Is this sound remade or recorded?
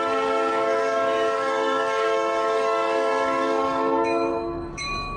remade